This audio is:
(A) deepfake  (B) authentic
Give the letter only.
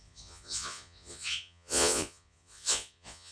A